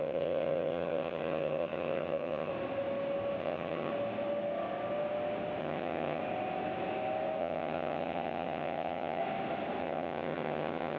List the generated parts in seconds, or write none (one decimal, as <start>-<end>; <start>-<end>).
0.0-2.5; 3.4-3.9; 5.6-6.2; 7.4-9.2; 9.8-11.0